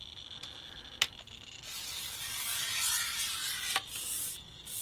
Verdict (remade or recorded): recorded